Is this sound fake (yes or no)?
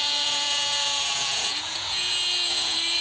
yes